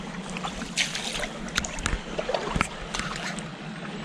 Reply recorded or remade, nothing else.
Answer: recorded